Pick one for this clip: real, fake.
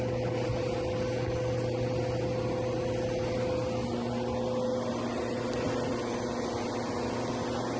real